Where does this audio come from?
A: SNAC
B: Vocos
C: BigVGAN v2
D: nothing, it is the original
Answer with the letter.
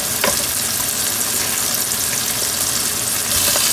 D